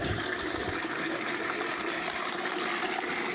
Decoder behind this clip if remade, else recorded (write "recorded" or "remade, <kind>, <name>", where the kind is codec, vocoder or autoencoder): recorded